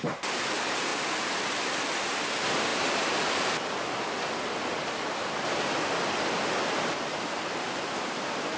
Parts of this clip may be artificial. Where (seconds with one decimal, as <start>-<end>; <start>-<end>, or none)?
0.9-2.2